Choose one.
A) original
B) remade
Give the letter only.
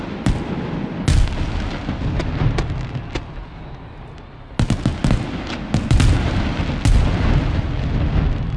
A